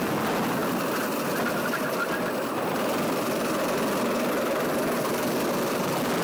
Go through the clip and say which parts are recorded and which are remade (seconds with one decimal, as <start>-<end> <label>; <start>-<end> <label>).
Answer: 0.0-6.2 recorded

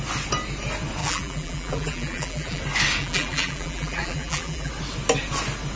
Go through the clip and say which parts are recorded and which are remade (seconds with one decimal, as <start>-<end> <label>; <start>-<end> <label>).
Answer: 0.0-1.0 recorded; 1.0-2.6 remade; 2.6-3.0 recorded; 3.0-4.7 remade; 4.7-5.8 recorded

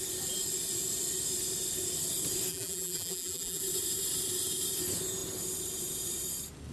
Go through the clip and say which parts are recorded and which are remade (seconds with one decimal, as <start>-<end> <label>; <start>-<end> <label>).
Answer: 0.0-2.5 recorded; 2.5-3.6 remade; 3.6-6.7 recorded

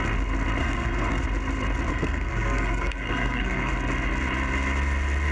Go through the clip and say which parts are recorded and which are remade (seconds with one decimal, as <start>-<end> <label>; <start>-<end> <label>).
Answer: 0.0-0.6 recorded; 0.6-1.2 remade; 1.2-1.9 recorded; 1.9-3.7 remade; 3.7-5.3 recorded

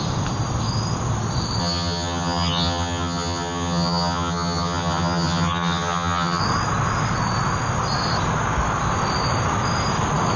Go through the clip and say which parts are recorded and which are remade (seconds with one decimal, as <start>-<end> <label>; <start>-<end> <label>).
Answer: 0.0-1.6 recorded; 1.6-6.4 remade; 6.4-10.4 recorded